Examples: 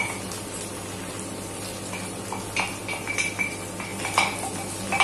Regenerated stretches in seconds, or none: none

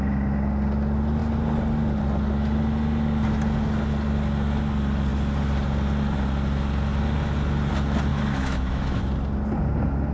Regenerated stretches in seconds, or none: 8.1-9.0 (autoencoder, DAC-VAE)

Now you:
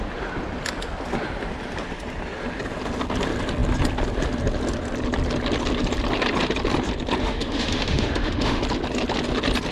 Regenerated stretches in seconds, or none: 7.2-8.6 (autoencoder, DAC-VAE)

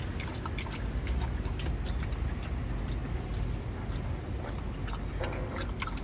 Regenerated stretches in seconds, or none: none

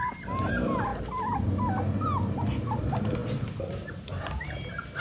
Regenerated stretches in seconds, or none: none

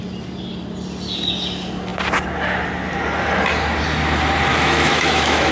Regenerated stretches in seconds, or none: 4.5-5.5 (autoencoder, DAC-VAE)

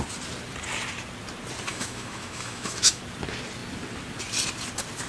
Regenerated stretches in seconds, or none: 1.7-3.0 (autoencoder, DAC-VAE)